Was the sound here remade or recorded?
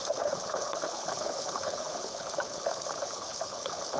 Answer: remade